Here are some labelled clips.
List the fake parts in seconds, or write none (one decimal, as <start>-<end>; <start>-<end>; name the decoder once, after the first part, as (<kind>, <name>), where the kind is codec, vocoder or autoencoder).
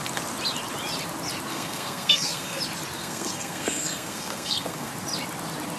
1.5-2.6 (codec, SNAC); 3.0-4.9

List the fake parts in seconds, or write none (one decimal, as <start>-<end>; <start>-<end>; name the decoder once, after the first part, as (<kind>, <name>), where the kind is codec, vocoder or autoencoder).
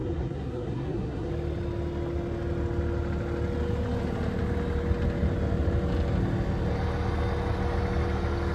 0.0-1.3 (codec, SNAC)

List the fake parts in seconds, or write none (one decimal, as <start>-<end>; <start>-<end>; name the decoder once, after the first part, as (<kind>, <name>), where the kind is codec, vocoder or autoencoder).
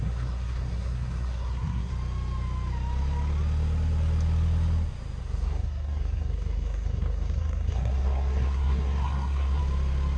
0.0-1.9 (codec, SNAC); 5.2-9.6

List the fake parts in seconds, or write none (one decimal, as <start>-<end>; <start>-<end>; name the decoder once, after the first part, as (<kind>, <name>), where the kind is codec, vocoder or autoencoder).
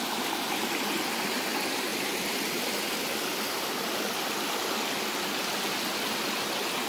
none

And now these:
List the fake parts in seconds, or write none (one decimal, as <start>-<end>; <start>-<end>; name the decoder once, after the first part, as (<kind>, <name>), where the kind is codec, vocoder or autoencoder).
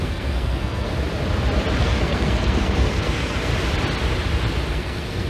0.0-0.9 (codec, SNAC); 1.8-3.5; 4.7-5.3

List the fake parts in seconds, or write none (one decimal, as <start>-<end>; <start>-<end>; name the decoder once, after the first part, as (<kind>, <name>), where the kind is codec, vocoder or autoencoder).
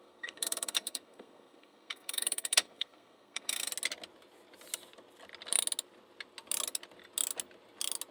0.0-3.7 (codec, SNAC)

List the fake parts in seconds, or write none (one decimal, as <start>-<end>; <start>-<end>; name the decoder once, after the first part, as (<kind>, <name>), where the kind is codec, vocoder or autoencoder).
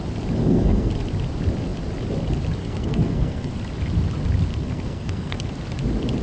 0.4-0.9 (codec, SNAC); 2.6-3.5; 4.5-5.5